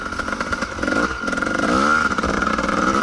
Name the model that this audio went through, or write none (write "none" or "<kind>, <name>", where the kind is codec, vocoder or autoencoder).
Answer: none